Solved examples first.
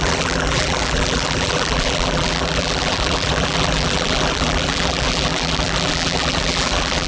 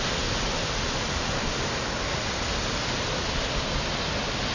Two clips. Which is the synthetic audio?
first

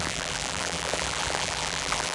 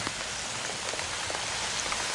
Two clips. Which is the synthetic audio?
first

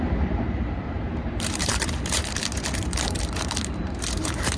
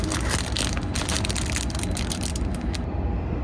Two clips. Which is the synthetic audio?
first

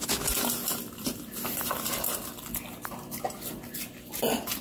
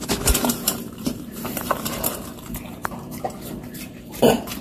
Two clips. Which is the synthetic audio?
second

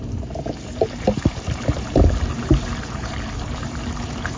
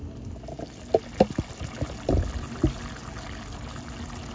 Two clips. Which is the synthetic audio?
first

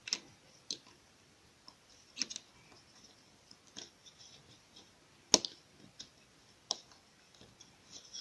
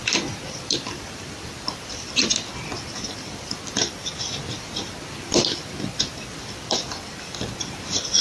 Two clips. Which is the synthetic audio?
second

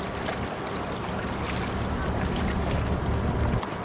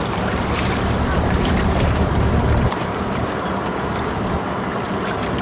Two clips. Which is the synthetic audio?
second